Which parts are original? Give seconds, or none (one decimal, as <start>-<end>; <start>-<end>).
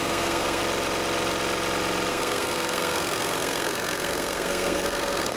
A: 0.6-2.1